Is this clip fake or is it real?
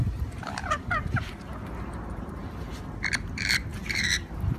fake